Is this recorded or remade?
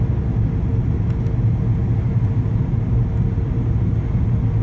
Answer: recorded